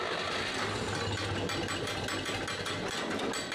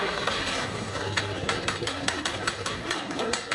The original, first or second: first